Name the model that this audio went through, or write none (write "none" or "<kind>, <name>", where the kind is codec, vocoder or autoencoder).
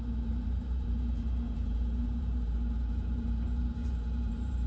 vocoder, BigVGAN v2